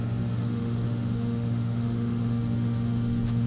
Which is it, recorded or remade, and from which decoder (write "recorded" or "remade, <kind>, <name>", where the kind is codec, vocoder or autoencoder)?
remade, autoencoder, DAC-VAE